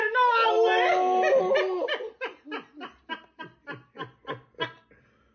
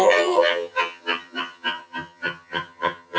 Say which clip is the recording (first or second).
first